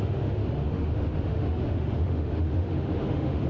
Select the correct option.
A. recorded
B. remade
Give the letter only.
B